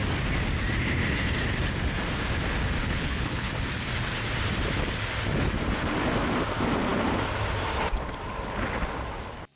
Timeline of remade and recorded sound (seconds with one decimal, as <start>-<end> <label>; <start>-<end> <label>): 0.0-2.8 recorded; 2.8-3.5 remade; 3.5-9.6 recorded